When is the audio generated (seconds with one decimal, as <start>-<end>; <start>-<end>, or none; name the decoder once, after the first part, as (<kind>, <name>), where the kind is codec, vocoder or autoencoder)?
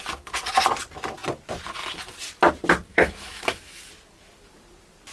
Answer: 2.9-3.8 (autoencoder, DAC-VAE)